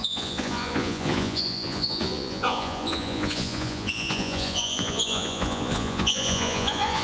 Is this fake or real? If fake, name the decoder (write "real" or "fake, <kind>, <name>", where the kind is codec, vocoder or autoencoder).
fake, vocoder, Vocos